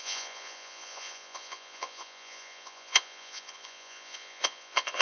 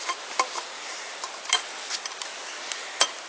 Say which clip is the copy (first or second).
first